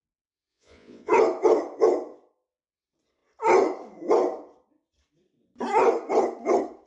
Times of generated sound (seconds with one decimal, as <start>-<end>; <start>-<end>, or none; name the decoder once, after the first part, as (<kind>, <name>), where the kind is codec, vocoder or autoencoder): 0.5-1.1 (vocoder, Vocos)